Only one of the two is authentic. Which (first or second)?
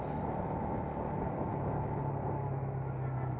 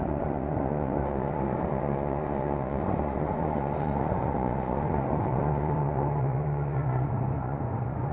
first